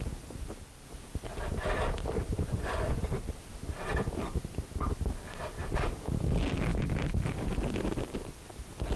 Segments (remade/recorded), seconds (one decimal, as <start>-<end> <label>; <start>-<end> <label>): 0.0-2.3 recorded; 2.3-3.1 remade; 3.1-9.0 recorded